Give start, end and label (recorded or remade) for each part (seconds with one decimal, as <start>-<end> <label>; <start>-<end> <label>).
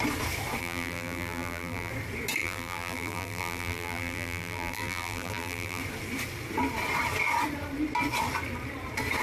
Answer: 0.0-0.6 recorded; 0.6-1.9 remade; 1.9-2.4 recorded; 2.4-5.8 remade; 5.8-9.2 recorded